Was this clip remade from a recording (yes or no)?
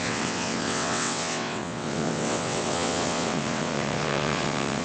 yes